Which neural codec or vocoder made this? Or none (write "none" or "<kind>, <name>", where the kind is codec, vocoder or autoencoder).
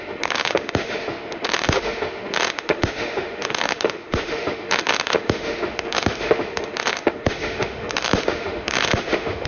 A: autoencoder, DAC-VAE